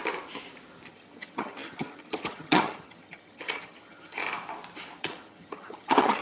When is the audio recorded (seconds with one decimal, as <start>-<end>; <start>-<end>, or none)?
0.0-0.9; 4.2-5.0